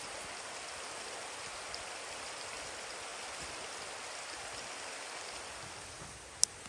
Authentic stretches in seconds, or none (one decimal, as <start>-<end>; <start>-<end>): 0.0-6.7